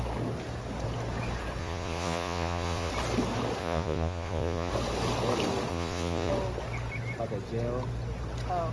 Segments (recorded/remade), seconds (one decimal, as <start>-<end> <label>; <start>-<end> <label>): 0.0-1.6 recorded; 1.6-2.9 remade; 2.9-3.6 recorded; 3.6-4.7 remade; 4.7-5.7 recorded; 5.7-6.3 remade; 6.3-8.7 recorded

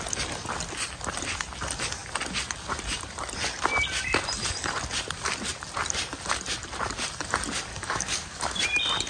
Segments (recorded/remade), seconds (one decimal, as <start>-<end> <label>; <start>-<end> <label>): 0.0-7.7 recorded; 7.7-8.6 remade; 8.6-9.1 recorded

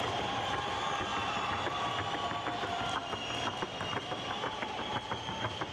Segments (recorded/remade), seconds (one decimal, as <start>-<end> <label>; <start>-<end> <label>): 0.0-1.1 recorded; 1.1-1.9 remade; 1.9-5.7 recorded

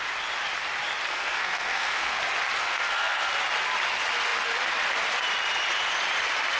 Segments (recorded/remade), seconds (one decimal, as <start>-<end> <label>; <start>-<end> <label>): 0.0-1.1 recorded; 1.1-2.2 remade; 2.2-2.6 recorded; 2.6-3.3 remade; 3.3-6.6 recorded

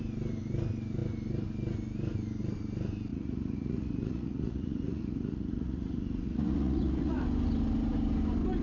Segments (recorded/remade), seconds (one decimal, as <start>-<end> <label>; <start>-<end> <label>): 0.0-3.1 recorded; 3.1-7.2 remade; 7.2-8.6 recorded

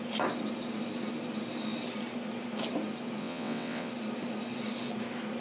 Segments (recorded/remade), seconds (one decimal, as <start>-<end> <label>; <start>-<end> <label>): 0.0-3.2 recorded; 3.2-3.9 remade; 3.9-5.4 recorded

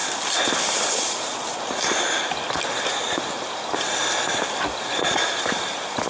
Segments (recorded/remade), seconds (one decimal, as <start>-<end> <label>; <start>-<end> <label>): 0.0-0.6 recorded; 0.6-1.3 remade; 1.3-5.0 recorded; 5.0-6.1 remade

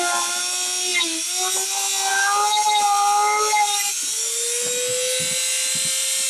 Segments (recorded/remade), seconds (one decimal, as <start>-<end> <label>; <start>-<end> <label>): 0.0-6.3 recorded